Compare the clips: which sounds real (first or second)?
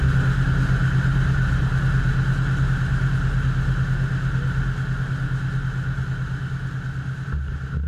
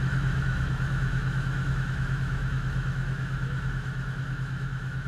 first